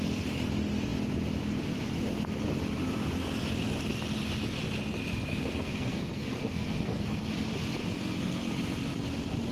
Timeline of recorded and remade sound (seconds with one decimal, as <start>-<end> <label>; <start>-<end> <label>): 0.0-5.3 recorded; 5.3-7.3 remade; 7.3-7.8 recorded; 7.8-8.5 remade; 8.5-9.5 recorded